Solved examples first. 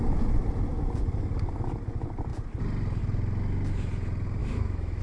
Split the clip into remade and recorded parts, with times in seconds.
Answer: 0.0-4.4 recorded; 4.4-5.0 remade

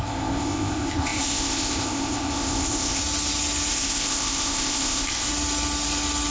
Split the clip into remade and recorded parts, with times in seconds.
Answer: 0.0-3.0 remade; 3.0-3.7 recorded; 3.7-5.3 remade; 5.3-6.3 recorded

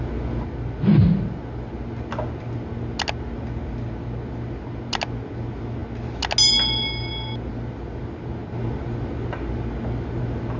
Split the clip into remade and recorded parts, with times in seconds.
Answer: 0.0-10.6 recorded

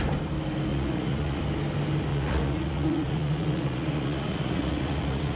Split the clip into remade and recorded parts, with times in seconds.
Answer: 0.0-0.7 recorded; 0.7-1.4 remade; 1.4-2.1 recorded; 2.1-5.4 remade

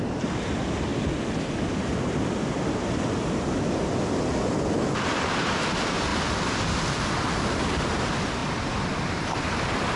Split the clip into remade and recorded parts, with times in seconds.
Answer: 0.0-6.1 remade; 6.1-8.0 recorded; 8.0-8.4 remade; 8.4-9.2 recorded; 9.2-10.0 remade

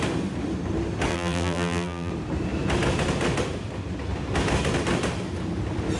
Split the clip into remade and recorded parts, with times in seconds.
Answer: 0.0-1.1 recorded; 1.1-2.1 remade; 2.1-6.0 recorded

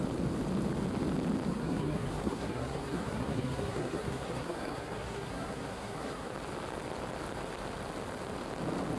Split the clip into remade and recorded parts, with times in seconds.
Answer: 0.0-1.5 recorded; 1.5-6.3 remade; 6.3-9.0 recorded